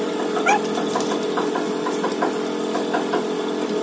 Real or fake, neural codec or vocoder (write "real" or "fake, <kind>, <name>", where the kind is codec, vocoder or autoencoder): real